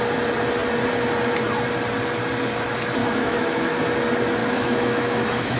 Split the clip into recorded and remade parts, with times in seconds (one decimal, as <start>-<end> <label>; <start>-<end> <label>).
0.0-3.0 recorded; 3.0-3.8 remade; 3.8-4.4 recorded; 4.4-5.6 remade